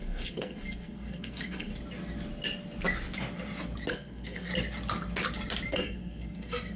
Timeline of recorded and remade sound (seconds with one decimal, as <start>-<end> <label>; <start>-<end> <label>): 0.0-1.7 remade; 1.7-3.9 recorded; 3.9-4.5 remade; 4.5-5.7 recorded; 5.7-6.8 remade